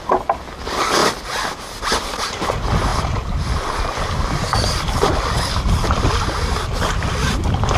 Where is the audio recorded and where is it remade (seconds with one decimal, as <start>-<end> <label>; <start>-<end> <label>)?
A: 0.0-7.8 recorded